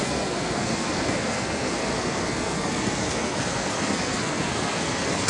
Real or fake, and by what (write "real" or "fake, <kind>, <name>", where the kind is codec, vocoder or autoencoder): fake, codec, SNAC